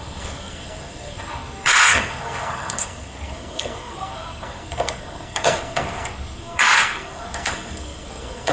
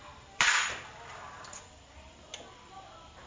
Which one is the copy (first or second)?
first